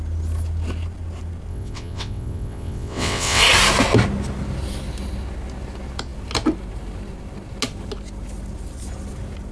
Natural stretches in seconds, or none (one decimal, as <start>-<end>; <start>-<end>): 0.0-1.5; 3.4-9.5

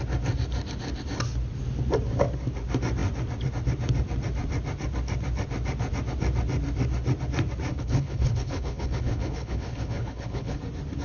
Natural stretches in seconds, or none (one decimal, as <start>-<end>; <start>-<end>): 0.0-7.7; 10.6-11.0

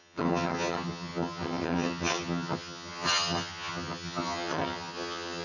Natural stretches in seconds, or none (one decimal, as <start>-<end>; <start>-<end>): none

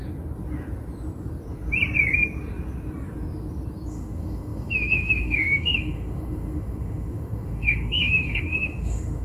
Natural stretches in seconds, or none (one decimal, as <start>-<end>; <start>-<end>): 0.0-3.9